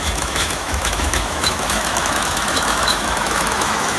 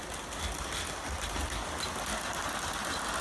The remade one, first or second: first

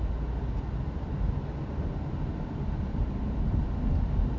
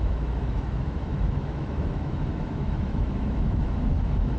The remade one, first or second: second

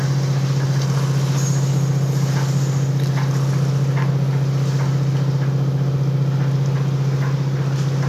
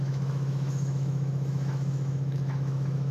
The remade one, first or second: second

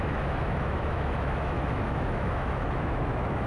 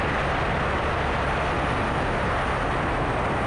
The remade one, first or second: first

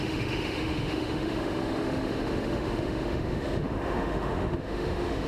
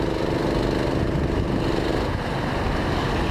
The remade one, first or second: first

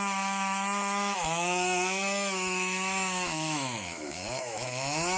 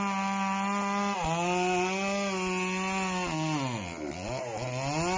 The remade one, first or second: first